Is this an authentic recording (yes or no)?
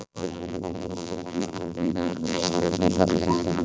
no